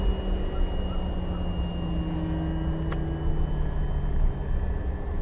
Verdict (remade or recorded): recorded